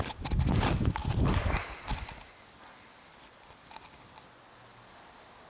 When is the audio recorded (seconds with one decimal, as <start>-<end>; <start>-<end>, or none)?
0.0-5.5